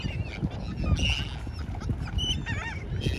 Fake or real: real